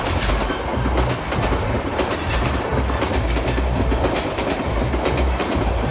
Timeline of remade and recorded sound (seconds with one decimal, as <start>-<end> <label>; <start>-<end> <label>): 0.0-0.7 remade; 0.7-1.4 recorded; 1.4-5.9 remade